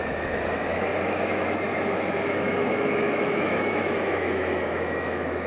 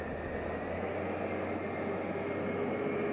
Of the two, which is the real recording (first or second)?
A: second